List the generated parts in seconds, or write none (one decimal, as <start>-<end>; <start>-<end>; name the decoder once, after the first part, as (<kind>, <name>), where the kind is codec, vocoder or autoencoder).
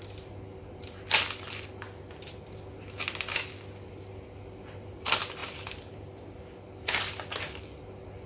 none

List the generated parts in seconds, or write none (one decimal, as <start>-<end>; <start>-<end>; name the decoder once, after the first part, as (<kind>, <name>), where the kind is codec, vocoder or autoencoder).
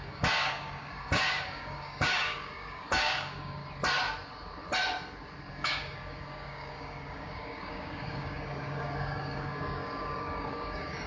0.0-3.6 (codec, DAC); 5.5-11.1